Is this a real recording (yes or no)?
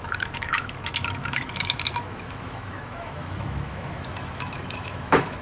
no